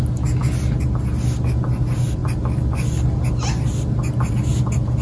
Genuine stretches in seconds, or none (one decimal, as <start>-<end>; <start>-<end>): 0.0-5.0